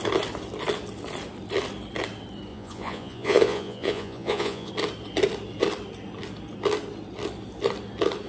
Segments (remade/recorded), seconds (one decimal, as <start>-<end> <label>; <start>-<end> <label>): 0.0-2.5 recorded; 2.5-4.7 remade; 4.7-8.3 recorded